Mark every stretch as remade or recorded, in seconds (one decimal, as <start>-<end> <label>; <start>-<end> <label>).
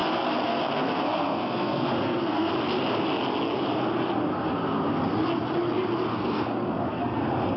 0.0-2.5 remade; 2.5-4.3 recorded; 4.3-5.0 remade; 5.0-6.1 recorded; 6.1-7.0 remade; 7.0-7.6 recorded